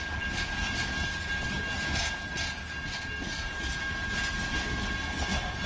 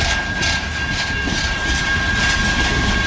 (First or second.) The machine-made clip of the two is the second